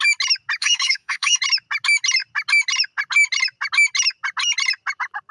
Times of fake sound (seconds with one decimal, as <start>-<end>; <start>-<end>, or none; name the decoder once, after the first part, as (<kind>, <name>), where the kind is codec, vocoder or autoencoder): 0.6-1.4 (autoencoder, DAC-VAE)